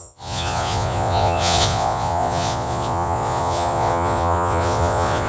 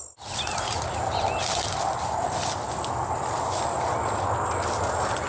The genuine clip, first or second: second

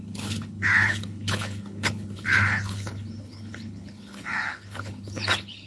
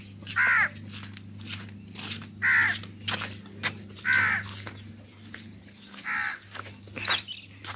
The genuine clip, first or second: second